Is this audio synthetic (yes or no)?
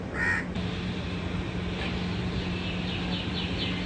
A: no